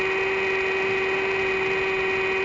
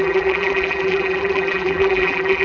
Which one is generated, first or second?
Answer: second